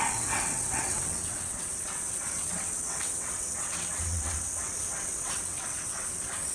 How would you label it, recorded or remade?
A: remade